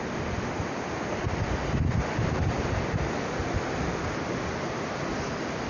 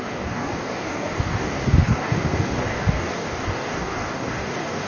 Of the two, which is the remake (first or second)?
second